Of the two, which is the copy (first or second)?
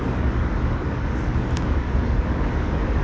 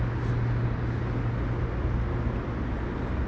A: first